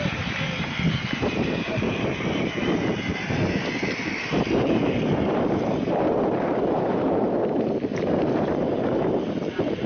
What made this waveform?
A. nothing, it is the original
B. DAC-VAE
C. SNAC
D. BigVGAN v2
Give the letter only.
D